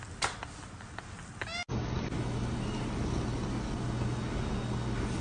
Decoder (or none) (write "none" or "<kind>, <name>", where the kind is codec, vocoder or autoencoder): none